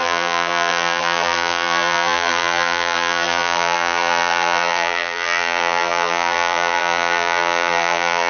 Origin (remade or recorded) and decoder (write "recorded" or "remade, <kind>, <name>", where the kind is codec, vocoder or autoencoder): remade, vocoder, BigVGAN v2